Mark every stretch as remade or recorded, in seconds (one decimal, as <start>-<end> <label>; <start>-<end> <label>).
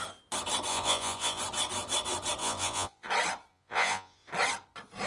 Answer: 0.0-0.7 recorded; 0.7-1.4 remade; 1.4-2.4 recorded; 2.4-3.1 remade; 3.1-3.5 recorded; 3.5-4.3 remade; 4.3-5.1 recorded